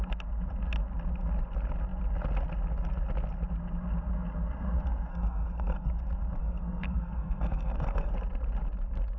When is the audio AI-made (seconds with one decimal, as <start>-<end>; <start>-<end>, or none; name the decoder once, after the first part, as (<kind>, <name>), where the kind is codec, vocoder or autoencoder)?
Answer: 5.1-5.9 (codec, SNAC); 6.4-8.1